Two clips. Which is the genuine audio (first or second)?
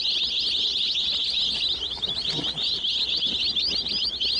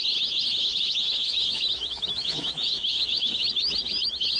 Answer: first